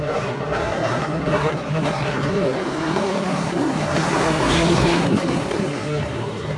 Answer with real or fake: fake